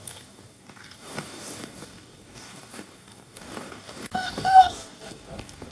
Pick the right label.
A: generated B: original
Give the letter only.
A